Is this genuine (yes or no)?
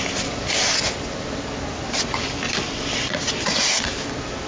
yes